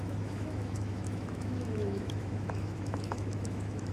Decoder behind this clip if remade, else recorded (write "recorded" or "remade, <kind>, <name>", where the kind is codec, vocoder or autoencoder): remade, autoencoder, DAC-VAE